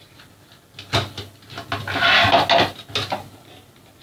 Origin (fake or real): real